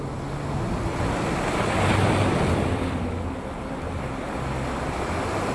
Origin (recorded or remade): recorded